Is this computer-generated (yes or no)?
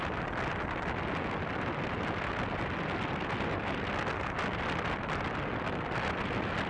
no